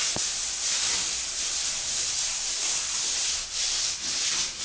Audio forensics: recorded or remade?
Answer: recorded